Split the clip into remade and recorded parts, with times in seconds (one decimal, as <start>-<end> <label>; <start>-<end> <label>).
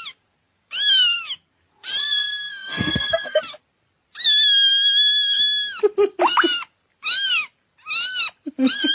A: 0.0-2.0 recorded; 2.0-3.4 remade; 3.4-8.9 recorded